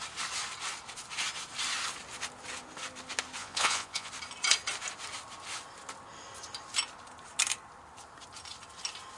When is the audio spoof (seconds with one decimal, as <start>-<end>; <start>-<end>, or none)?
3.4-4.1